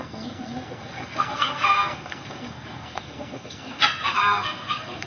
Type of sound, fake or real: fake